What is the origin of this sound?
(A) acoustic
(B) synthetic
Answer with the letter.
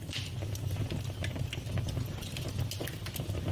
A